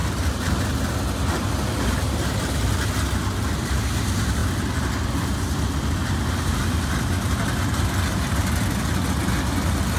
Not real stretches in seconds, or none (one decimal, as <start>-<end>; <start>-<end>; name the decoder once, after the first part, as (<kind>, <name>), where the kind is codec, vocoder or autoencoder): none